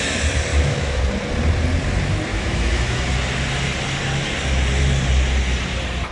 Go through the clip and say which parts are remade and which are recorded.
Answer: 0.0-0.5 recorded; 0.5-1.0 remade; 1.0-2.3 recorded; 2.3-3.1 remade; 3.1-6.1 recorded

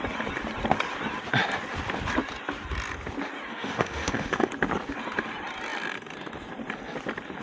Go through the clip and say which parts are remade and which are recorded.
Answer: 0.0-3.5 recorded; 3.5-4.5 remade; 4.5-7.4 recorded